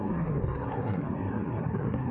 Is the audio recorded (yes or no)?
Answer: no